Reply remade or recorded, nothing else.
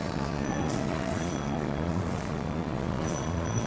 remade